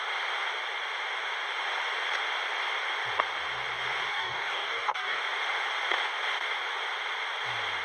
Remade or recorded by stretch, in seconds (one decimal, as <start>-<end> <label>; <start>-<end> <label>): 0.0-4.1 recorded; 4.1-5.2 remade; 5.2-7.8 recorded